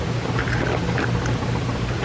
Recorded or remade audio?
recorded